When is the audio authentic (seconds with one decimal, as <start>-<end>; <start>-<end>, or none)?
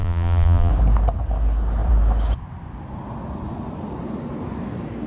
0.7-5.1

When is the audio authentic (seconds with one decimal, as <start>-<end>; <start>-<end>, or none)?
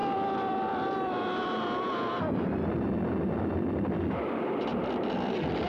2.2-4.7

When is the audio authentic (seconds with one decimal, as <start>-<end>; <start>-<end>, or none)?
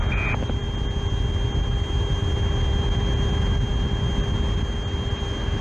0.0-5.6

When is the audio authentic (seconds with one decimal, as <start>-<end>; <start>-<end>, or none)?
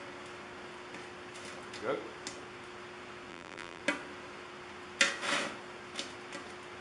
0.0-3.3; 3.8-6.8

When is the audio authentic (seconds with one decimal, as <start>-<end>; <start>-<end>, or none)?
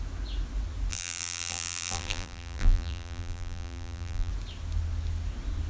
0.0-0.9; 4.3-5.7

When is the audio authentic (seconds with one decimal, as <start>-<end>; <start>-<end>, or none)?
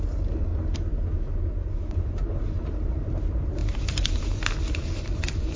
0.5-1.5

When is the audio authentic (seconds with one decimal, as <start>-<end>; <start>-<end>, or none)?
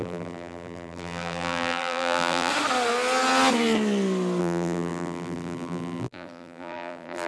2.5-4.4